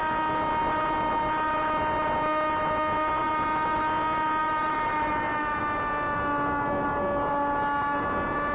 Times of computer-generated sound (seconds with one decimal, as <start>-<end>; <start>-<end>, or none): 4.4-5.6